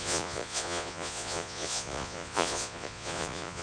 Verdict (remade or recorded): remade